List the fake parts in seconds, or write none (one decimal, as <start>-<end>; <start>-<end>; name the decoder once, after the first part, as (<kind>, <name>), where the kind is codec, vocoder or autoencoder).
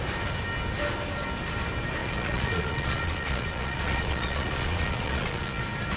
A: 2.0-5.6 (vocoder, Vocos)